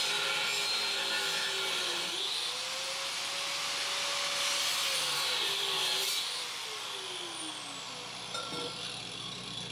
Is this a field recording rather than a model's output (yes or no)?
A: yes